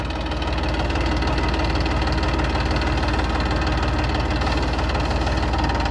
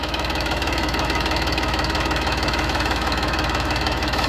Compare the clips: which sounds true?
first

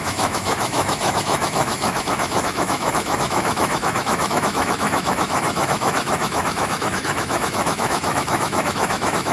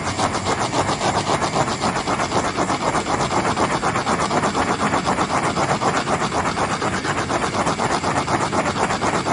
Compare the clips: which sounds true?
second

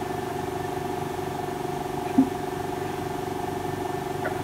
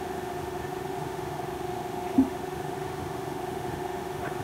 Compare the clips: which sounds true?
first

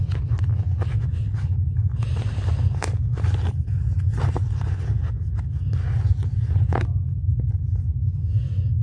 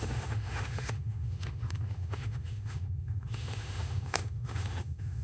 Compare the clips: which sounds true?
first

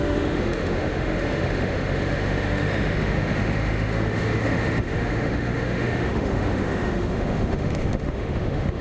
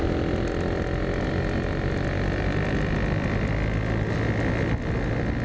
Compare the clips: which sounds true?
second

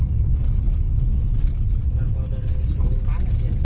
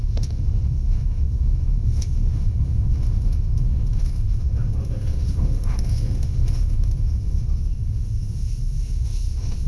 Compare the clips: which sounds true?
first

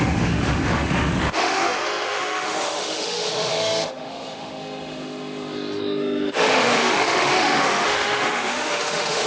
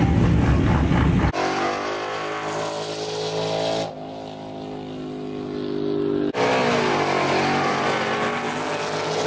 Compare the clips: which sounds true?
second